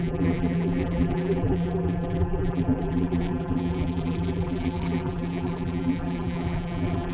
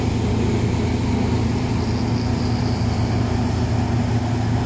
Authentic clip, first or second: second